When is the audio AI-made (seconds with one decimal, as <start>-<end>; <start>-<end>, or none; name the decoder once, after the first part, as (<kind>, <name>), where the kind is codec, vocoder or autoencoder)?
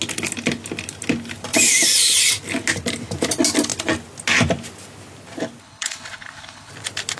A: 5.6-6.7 (codec, HILCodec)